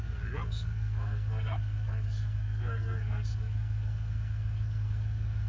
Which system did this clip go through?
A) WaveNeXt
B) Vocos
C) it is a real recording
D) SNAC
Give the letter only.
D